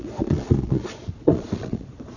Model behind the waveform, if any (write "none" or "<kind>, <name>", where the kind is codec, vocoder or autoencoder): vocoder, Vocos